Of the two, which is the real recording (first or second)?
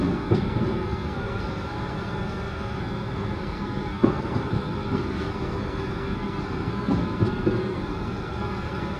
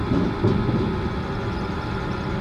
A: second